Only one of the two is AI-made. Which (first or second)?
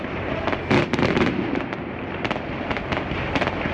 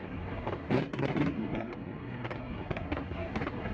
second